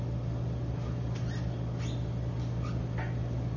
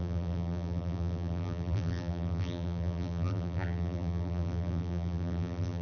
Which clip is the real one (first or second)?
first